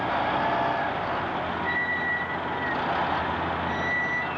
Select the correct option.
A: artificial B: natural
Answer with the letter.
B